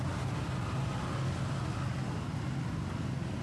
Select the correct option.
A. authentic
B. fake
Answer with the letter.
A